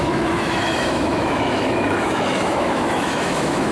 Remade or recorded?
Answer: remade